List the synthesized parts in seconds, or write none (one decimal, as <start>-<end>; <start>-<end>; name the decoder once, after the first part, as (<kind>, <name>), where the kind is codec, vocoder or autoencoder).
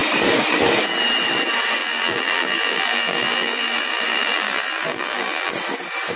1.8-5.5 (vocoder, BigVGAN v2)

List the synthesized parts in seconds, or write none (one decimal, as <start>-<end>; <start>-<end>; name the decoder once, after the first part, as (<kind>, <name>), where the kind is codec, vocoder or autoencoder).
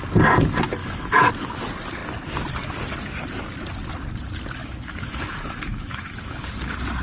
0.8-1.3 (autoencoder, DAC-VAE); 4.6-6.4